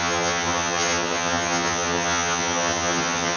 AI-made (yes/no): yes